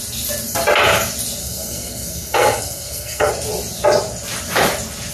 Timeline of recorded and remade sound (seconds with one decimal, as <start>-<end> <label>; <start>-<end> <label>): 0.0-1.4 recorded; 1.4-3.3 remade; 3.3-5.1 recorded